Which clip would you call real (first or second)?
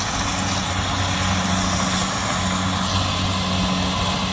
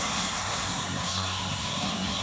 first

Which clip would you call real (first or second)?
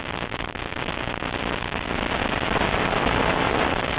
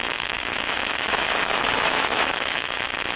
first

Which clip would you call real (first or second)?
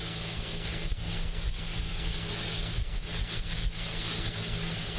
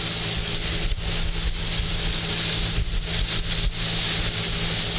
second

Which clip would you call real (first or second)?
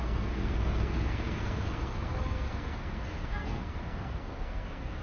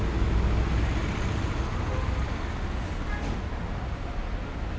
second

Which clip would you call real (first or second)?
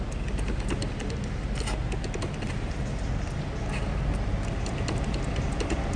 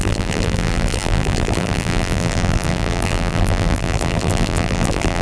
first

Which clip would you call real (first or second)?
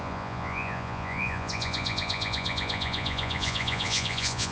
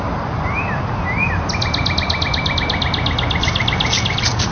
second